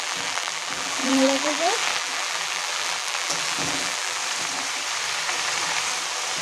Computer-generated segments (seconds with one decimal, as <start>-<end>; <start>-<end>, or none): 0.0-4.2